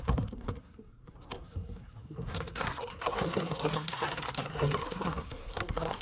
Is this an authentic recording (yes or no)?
no